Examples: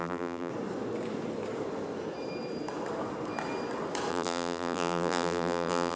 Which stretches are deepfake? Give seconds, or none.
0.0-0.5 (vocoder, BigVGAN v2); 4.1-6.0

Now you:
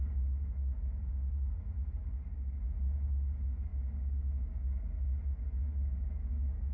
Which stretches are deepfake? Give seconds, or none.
none

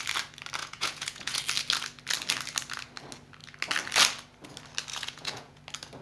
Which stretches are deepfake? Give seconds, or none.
0.6-1.4 (vocoder, Vocos); 4.9-5.6

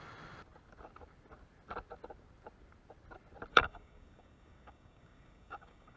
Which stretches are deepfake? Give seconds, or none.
3.5-6.0 (codec, DAC)